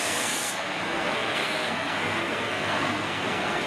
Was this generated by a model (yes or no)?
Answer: yes